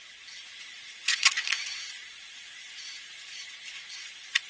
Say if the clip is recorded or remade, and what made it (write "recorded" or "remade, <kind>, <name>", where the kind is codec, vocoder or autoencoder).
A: remade, vocoder, Vocos